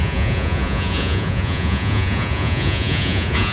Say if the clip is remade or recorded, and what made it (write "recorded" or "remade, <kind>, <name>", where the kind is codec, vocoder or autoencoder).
remade, vocoder, Vocos